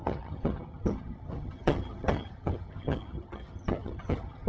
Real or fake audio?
fake